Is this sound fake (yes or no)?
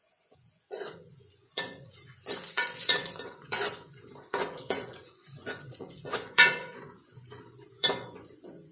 yes